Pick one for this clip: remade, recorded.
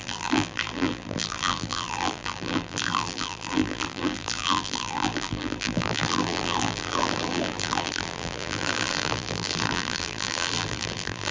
remade